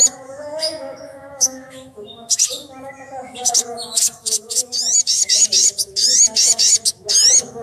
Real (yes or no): no